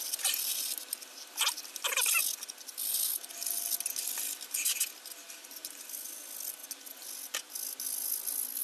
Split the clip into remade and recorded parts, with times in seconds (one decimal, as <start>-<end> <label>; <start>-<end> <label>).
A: 0.0-8.6 recorded